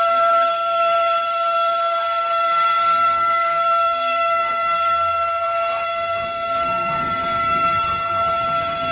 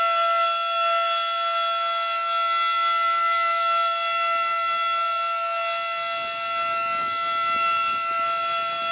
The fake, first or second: first